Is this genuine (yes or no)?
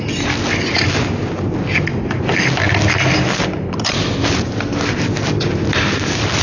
yes